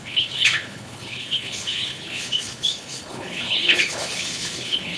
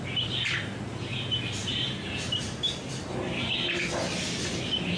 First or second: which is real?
second